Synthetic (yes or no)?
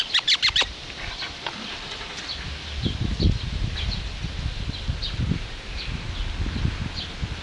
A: no